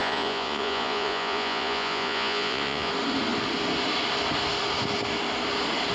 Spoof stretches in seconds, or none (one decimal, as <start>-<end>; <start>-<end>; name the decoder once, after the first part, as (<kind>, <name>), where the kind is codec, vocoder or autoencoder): 0.0-2.9 (vocoder, Vocos)